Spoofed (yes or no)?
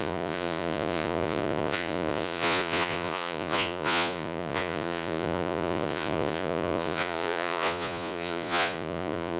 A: yes